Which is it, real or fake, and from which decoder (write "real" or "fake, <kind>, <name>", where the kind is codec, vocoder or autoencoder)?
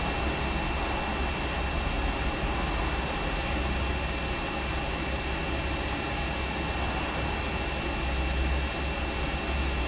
real